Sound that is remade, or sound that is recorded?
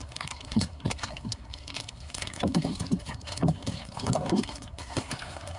remade